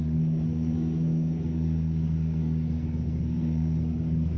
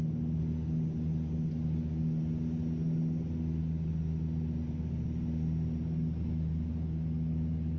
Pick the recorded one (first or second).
second